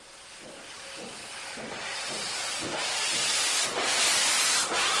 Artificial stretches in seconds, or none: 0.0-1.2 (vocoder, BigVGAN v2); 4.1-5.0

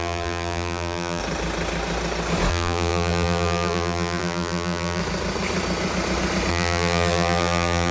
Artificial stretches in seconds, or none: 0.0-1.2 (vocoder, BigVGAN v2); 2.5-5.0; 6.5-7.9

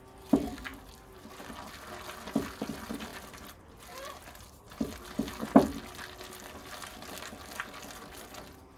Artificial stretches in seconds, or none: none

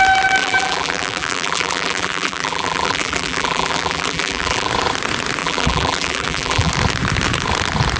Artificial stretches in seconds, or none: 0.4-4.7 (vocoder, BigVGAN v2); 5.4-6.7